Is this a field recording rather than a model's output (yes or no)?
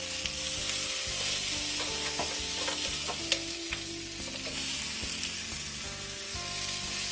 yes